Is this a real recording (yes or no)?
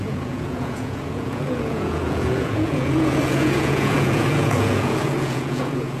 no